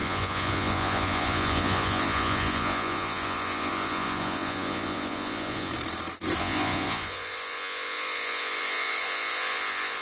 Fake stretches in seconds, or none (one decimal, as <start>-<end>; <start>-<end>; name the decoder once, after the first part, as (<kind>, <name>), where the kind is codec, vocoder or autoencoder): 0.0-5.7 (vocoder, Vocos); 6.4-10.0